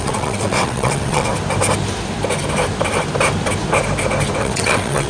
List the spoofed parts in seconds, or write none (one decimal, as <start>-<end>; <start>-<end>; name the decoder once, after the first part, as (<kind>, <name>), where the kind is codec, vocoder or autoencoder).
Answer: 0.0-1.3 (vocoder, WaveNeXt); 4.4-5.1